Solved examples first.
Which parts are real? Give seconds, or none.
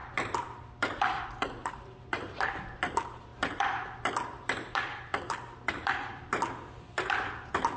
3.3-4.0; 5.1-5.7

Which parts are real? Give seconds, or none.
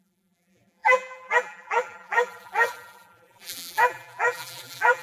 none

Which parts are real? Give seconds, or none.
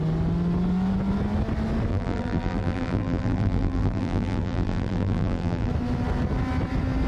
0.0-1.9; 5.7-7.1